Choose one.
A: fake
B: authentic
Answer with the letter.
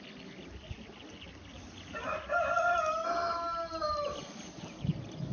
B